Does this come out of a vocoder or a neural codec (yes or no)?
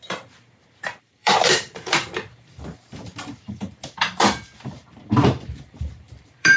yes